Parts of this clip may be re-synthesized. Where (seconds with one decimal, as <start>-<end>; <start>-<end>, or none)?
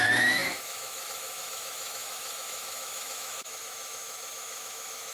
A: 0.0-5.1